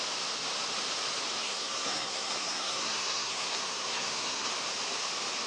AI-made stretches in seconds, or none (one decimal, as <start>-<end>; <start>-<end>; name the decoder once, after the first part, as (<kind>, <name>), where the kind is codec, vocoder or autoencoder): 1.4-4.5 (codec, SNAC)